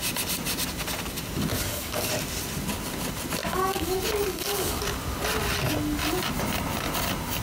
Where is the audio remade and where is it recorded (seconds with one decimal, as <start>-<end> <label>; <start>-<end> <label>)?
0.0-1.5 recorded; 1.5-2.1 remade; 2.1-3.4 recorded; 3.4-4.8 remade; 4.8-7.4 recorded